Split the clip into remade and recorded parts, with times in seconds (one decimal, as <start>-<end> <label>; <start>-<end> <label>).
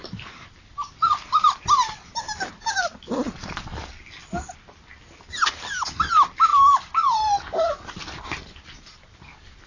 0.0-9.7 recorded